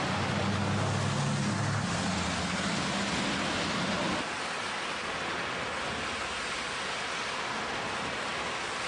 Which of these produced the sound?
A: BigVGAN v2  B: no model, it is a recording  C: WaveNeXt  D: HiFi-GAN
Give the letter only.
B